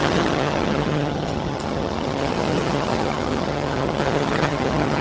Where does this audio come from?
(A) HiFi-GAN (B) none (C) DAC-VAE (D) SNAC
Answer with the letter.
A